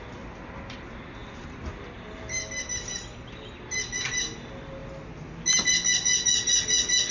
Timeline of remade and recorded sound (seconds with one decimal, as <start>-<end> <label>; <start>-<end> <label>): 0.0-7.1 recorded